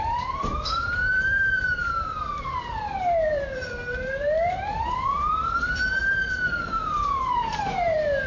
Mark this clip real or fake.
fake